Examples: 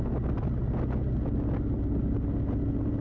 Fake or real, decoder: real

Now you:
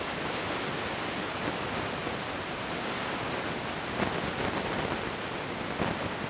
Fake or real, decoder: real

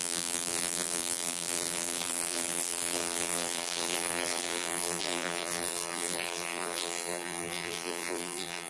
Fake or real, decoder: fake, vocoder, BigVGAN v2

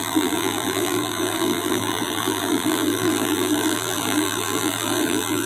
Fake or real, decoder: fake, vocoder, BigVGAN v2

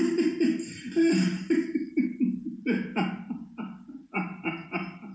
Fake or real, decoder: fake, vocoder, BigVGAN v2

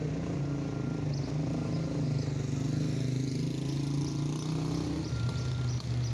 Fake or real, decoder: real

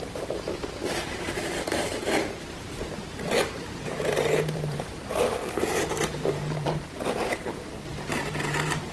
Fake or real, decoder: fake, vocoder, BigVGAN v2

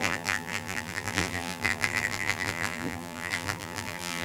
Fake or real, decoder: fake, vocoder, BigVGAN v2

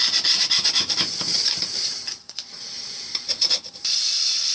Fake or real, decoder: fake, vocoder, BigVGAN v2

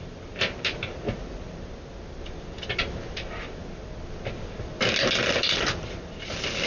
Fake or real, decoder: real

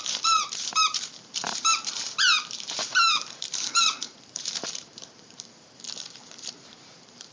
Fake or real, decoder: fake, vocoder, BigVGAN v2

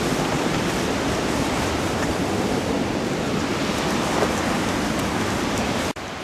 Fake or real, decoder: fake, vocoder, BigVGAN v2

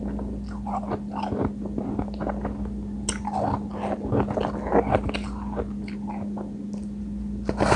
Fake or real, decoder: real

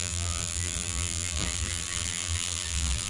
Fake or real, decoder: fake, vocoder, BigVGAN v2